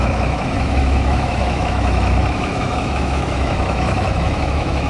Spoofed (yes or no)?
yes